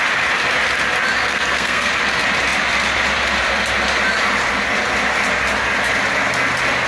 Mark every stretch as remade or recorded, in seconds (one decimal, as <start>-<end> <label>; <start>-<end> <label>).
0.0-1.2 recorded; 1.2-1.9 remade; 1.9-6.9 recorded